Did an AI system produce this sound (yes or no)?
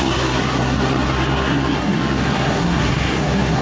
yes